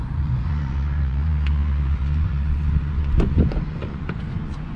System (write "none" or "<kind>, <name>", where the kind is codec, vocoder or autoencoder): vocoder, Vocos